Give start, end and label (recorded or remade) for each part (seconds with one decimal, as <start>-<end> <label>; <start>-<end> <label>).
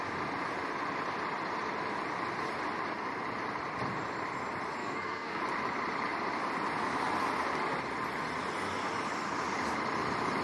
0.0-4.8 recorded; 4.8-5.4 remade; 5.4-10.4 recorded